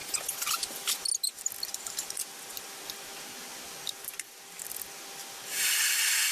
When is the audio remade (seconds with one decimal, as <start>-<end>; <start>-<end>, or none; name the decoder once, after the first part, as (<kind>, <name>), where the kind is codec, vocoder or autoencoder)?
none

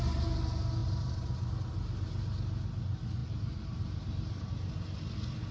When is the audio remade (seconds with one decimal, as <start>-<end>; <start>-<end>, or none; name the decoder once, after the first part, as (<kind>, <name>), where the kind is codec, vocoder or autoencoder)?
0.8-1.5 (vocoder, BigVGAN v2); 3.2-4.5

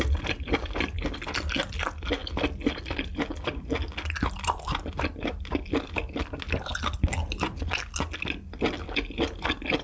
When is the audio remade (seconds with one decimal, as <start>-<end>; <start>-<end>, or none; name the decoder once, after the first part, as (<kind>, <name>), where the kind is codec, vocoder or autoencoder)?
none

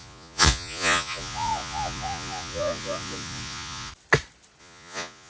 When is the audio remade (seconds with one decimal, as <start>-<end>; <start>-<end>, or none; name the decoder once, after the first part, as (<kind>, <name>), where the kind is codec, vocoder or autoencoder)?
0.0-3.9 (vocoder, Vocos); 4.6-5.3

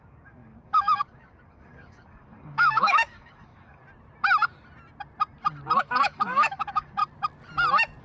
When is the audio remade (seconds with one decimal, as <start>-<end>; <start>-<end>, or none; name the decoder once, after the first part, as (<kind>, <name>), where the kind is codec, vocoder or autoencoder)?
0.0-3.8 (codec, DAC); 5.8-7.0

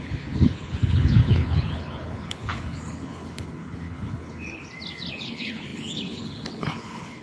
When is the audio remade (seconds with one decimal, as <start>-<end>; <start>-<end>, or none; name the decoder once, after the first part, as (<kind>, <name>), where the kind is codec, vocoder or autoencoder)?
0.0-4.6 (codec, HILCodec); 5.1-7.2

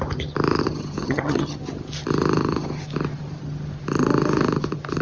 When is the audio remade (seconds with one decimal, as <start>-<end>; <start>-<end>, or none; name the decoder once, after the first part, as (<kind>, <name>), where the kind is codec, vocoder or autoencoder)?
1.0-1.6 (vocoder, HiFi-GAN)

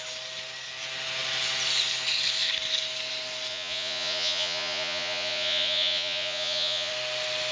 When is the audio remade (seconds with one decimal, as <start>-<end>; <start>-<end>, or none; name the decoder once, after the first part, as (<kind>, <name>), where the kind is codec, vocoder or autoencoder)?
3.5-6.9 (vocoder, Vocos)